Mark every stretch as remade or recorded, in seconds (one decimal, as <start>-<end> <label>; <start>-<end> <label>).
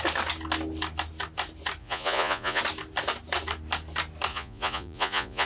0.0-1.8 recorded; 1.8-2.6 remade; 2.6-4.3 recorded; 4.3-5.5 remade